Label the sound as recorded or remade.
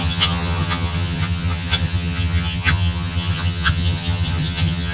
remade